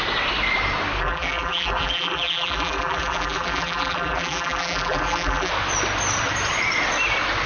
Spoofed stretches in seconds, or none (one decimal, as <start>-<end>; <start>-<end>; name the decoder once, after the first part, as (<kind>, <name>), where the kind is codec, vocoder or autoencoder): 1.0-5.5 (vocoder, BigVGAN v2)